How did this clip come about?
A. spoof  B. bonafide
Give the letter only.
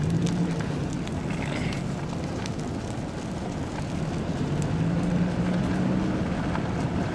B